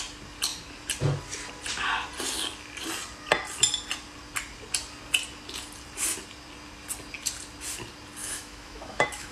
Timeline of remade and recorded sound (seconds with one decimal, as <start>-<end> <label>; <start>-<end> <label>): 0.0-8.2 recorded; 8.2-9.3 remade